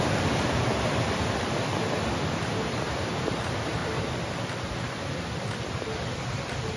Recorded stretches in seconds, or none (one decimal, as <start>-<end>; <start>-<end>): 0.0-6.8